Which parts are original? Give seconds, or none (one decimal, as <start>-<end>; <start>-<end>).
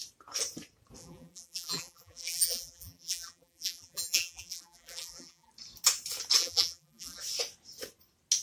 0.0-1.0; 5.5-6.4; 7.2-8.4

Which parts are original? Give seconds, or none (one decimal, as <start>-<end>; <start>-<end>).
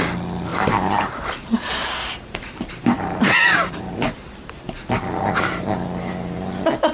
0.0-0.5; 4.6-6.9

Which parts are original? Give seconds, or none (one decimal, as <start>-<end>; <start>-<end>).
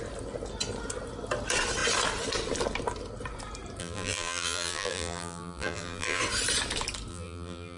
0.0-3.8; 6.2-7.1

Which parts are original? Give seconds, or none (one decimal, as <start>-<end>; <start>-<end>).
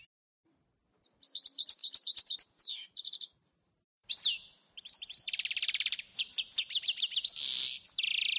0.0-1.8; 6.8-8.4